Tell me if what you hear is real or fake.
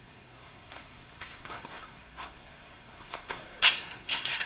fake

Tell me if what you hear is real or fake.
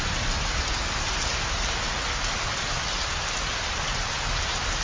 real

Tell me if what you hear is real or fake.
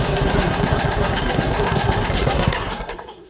fake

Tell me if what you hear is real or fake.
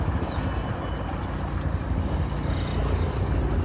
real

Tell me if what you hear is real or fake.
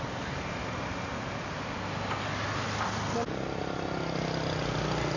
real